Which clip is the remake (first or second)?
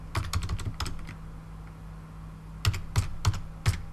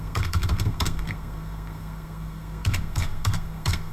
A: second